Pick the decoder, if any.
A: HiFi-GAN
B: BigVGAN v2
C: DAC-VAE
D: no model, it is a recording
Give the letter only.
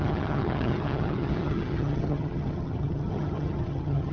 A